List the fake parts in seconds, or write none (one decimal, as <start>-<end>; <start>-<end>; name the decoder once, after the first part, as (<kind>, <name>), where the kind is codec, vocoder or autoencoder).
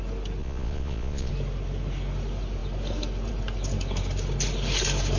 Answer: 0.4-1.3 (vocoder, Vocos)